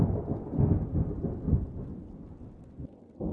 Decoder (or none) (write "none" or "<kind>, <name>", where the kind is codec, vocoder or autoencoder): none